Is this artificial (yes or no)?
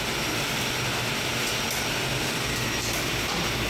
no